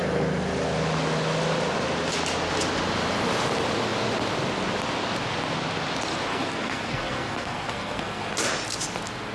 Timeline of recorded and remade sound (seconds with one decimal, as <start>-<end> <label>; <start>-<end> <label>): 0.0-6.3 recorded; 6.3-8.3 remade; 8.3-9.3 recorded